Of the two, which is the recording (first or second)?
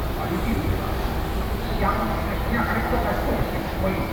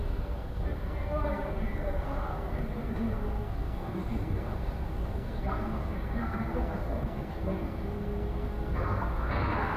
first